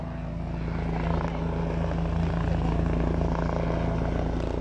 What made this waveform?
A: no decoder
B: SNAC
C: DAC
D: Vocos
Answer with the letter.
A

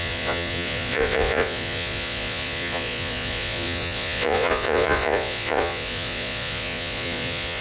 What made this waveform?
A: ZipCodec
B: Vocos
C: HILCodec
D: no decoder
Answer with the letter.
B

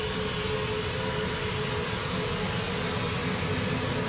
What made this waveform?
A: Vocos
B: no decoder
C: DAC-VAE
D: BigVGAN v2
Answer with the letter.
B